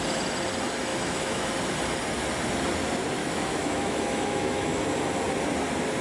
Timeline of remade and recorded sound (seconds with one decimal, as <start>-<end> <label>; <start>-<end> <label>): 0.0-0.9 recorded; 0.9-1.5 remade; 1.5-3.2 recorded; 3.2-4.8 remade; 4.8-6.0 recorded